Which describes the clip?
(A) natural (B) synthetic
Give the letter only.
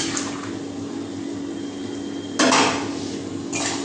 A